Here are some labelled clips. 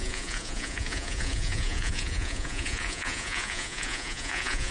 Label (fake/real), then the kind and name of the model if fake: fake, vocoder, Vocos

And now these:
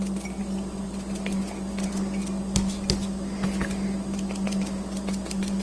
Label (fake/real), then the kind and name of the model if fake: real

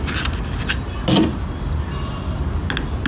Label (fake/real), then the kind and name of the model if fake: real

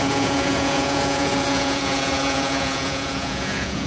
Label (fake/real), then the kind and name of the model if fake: fake, vocoder, Vocos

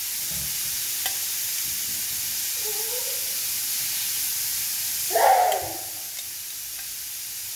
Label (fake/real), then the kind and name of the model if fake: real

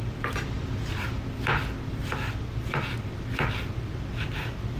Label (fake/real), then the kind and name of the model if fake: real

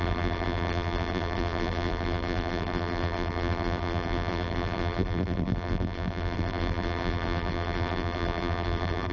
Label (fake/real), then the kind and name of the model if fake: fake, vocoder, BigVGAN v2